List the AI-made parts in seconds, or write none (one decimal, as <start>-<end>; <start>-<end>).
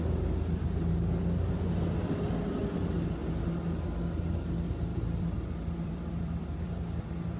4.9-7.0